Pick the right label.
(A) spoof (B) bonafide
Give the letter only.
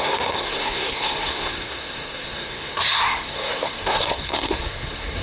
A